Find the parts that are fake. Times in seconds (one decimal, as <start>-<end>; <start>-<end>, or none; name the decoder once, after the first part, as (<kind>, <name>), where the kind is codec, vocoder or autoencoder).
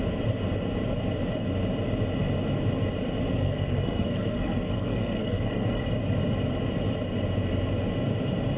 3.3-5.8 (codec, SNAC)